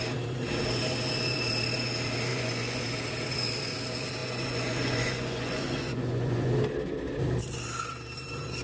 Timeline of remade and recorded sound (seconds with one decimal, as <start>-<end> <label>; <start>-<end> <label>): 0.0-2.3 recorded; 2.3-2.8 remade; 2.8-4.2 recorded; 4.2-6.5 remade; 6.5-8.6 recorded